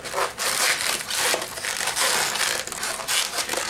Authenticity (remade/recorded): remade